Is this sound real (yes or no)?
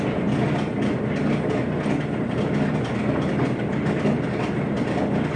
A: yes